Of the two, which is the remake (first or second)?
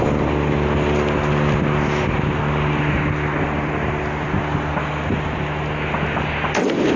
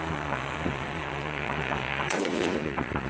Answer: second